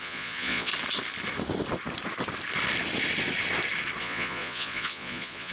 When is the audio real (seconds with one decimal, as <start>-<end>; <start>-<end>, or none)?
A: 0.7-4.0